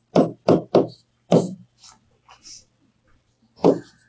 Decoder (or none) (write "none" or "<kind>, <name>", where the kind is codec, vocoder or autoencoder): none